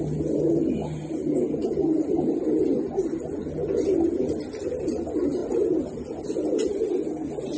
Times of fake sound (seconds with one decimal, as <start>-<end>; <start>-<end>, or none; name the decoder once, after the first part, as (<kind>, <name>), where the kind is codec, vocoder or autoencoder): 5.4-6.0 (vocoder, BigVGAN v2)